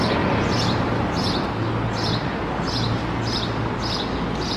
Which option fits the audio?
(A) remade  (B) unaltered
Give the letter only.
B